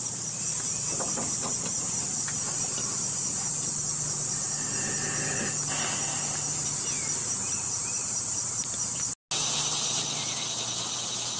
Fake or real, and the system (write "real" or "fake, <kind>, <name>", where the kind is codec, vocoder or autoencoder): real